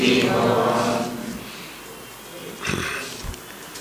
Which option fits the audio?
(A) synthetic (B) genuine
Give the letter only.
B